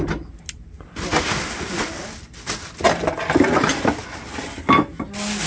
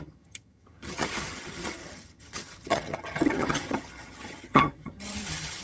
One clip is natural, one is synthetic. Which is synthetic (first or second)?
second